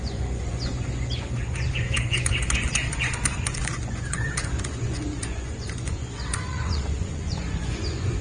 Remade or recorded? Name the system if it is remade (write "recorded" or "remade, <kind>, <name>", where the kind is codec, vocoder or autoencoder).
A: remade, vocoder, Vocos